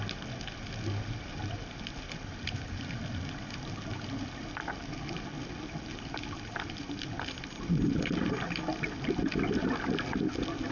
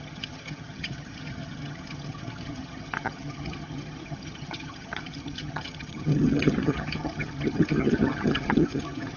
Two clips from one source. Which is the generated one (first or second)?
second